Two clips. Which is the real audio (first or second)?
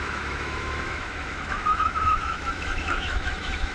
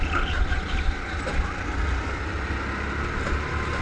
second